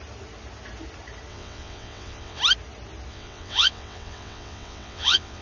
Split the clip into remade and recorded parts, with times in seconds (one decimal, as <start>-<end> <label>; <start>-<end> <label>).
0.0-1.3 recorded; 1.3-2.4 remade; 2.4-3.1 recorded; 3.1-5.4 remade